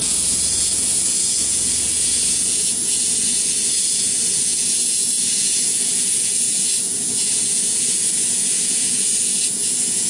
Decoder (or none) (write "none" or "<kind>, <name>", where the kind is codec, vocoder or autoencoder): vocoder, Vocos